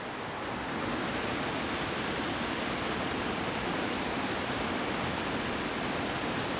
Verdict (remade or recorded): recorded